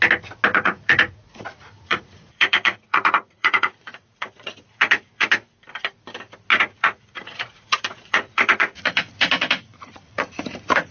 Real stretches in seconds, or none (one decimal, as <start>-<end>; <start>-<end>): 0.0-0.5; 5.3-6.5

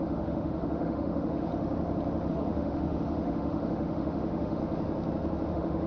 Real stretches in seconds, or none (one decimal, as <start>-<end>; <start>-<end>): 1.5-2.3; 4.6-5.5

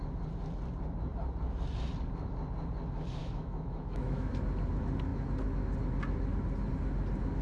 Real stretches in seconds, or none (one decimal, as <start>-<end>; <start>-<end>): 0.0-3.2; 4.3-7.4

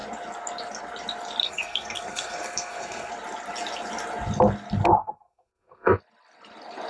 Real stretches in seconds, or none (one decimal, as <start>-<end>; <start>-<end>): 0.0-1.4; 3.1-5.0; 6.0-6.9

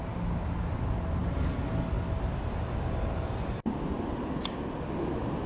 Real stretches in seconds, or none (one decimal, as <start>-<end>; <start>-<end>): 0.0-5.5

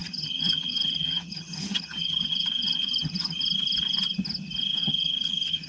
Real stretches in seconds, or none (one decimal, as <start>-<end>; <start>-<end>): 3.4-4.8